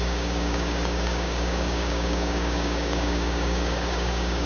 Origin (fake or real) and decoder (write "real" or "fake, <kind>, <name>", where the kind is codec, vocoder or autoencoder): fake, codec, DAC